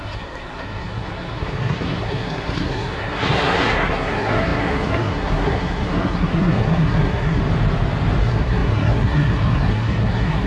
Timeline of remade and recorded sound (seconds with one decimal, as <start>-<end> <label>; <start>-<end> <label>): 0.0-7.4 remade; 7.4-8.2 recorded; 8.2-10.5 remade